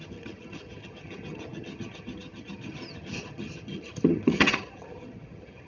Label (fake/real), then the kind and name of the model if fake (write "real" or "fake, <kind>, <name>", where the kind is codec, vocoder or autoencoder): fake, vocoder, HiFi-GAN